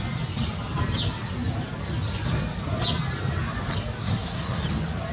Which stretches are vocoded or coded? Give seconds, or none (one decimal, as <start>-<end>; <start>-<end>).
4.0-4.6